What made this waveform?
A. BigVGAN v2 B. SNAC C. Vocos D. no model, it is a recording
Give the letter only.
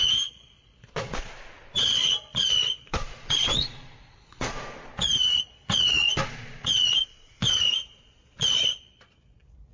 C